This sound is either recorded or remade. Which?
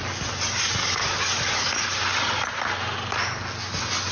recorded